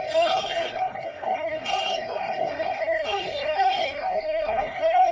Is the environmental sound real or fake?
fake